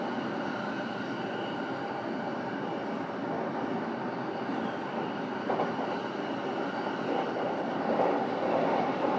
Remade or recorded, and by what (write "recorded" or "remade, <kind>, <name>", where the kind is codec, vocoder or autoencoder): recorded